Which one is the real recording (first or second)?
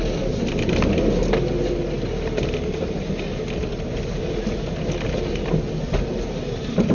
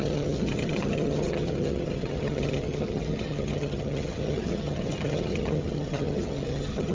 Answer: first